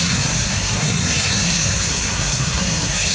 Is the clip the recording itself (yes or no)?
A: no